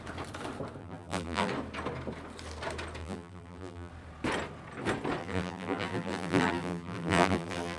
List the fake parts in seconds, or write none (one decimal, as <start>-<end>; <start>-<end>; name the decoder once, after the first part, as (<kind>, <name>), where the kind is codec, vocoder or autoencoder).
0.8-1.5 (vocoder, BigVGAN v2); 3.0-3.9; 5.2-7.8